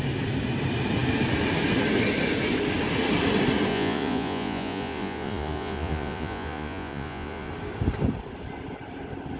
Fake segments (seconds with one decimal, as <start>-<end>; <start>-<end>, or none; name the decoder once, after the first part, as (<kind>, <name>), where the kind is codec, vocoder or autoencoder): 3.7-7.5 (vocoder, Vocos)